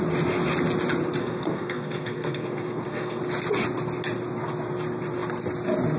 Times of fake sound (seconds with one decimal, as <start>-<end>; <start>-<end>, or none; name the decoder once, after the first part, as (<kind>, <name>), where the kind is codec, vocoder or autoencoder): 1.2-3.2 (codec, SNAC)